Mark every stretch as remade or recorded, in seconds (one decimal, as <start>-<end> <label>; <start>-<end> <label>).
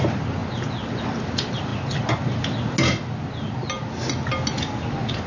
0.0-5.3 recorded